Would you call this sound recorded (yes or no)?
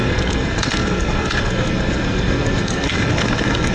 no